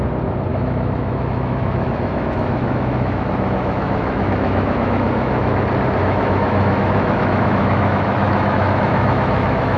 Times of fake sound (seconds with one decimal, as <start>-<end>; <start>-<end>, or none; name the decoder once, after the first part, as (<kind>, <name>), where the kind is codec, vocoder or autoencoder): 0.5-5.6 (autoencoder, DAC-VAE); 6.0-9.8